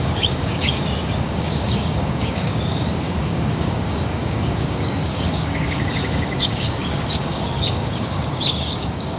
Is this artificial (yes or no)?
yes